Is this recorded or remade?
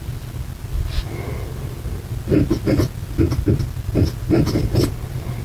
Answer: recorded